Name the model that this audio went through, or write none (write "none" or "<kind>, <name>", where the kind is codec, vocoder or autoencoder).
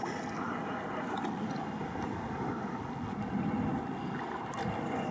none